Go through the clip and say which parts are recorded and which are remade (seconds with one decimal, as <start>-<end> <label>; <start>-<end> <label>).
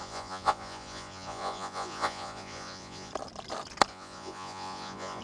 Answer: 0.0-3.1 remade; 3.1-3.9 recorded; 3.9-5.2 remade